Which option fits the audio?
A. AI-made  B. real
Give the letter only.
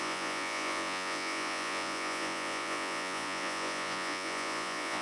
A